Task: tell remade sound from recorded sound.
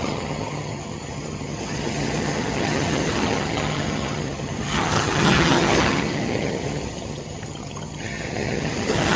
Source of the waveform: remade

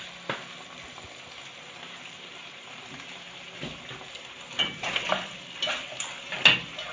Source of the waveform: recorded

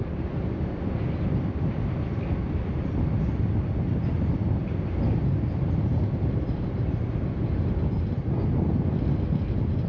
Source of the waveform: recorded